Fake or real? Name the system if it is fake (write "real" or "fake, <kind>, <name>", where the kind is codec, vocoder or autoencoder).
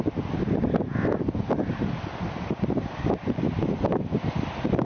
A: real